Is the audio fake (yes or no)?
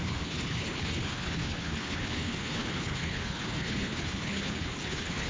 yes